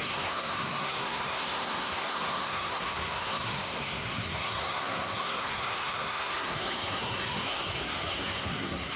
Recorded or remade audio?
remade